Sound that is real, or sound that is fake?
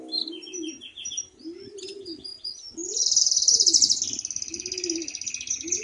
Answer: real